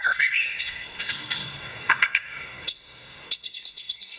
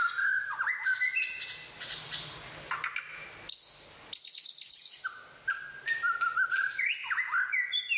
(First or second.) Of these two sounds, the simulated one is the first